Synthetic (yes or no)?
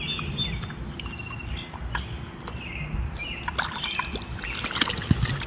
no